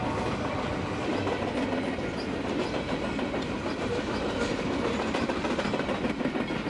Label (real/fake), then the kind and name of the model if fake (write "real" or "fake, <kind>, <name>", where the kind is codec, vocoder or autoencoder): real